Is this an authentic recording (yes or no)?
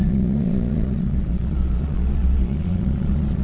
no